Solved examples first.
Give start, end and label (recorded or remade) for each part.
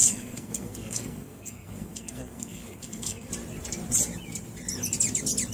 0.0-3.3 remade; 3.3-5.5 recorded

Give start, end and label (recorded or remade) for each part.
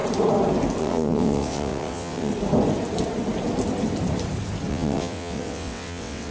0.0-0.8 recorded; 0.8-2.3 remade; 2.3-4.7 recorded; 4.7-6.3 remade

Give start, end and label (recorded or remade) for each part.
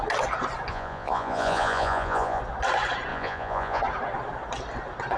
0.0-0.7 recorded; 0.7-2.4 remade; 2.4-3.1 recorded; 3.1-3.8 remade; 3.8-5.2 recorded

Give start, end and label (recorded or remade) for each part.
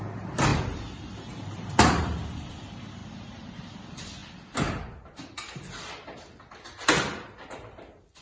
0.0-0.5 recorded; 0.5-2.5 remade; 2.5-3.0 recorded; 3.0-3.7 remade; 3.7-8.2 recorded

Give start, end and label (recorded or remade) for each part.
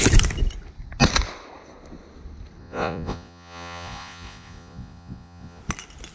0.0-2.6 recorded; 2.6-5.6 remade; 5.6-6.1 recorded